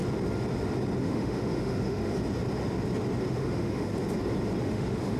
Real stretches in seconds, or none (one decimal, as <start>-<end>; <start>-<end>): 0.0-1.0; 2.1-3.3; 3.9-4.6